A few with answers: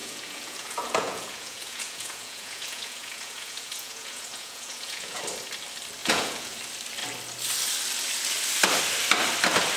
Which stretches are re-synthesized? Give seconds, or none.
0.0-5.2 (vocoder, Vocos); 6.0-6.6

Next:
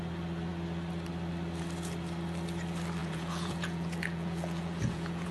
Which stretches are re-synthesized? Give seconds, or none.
3.0-5.3 (vocoder, Vocos)